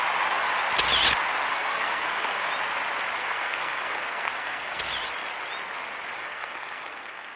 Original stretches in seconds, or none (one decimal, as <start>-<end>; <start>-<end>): 0.0-1.5; 2.5-3.2; 4.8-6.2